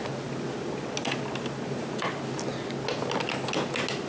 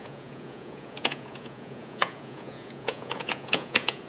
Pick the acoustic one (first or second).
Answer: first